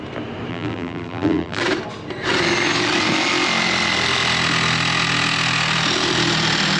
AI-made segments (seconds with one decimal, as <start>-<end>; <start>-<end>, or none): 0.5-1.6